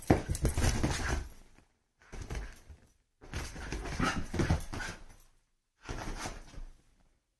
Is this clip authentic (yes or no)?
yes